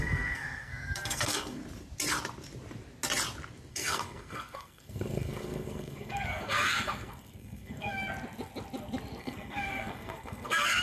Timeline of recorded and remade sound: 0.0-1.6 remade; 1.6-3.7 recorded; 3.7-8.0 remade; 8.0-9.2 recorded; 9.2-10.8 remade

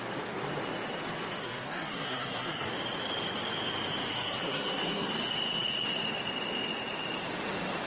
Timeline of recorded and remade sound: 0.0-1.4 recorded; 1.4-2.7 remade; 2.7-4.1 recorded; 4.1-5.1 remade; 5.1-7.9 recorded

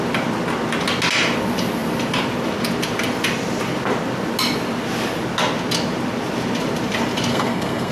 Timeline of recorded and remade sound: 0.0-7.3 recorded; 7.3-7.9 remade

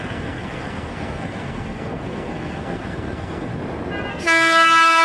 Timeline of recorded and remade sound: 0.0-3.5 remade; 3.5-4.1 recorded; 4.1-5.0 remade

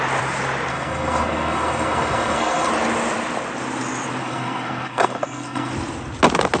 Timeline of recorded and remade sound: 0.0-0.7 recorded; 0.7-2.7 remade; 2.7-4.2 recorded; 4.2-5.7 remade; 5.7-6.6 recorded

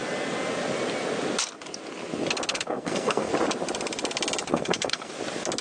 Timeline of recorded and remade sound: 0.0-2.5 recorded; 2.5-3.3 remade; 3.3-4.5 recorded; 4.5-5.1 remade; 5.1-5.6 recorded

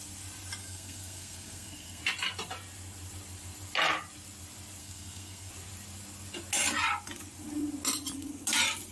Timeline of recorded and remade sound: 0.0-0.6 recorded; 0.6-2.0 remade; 2.0-4.8 recorded; 4.8-5.5 remade; 5.5-8.9 recorded